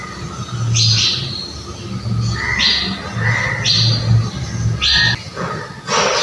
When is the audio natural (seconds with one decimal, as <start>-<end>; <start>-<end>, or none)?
0.0-6.2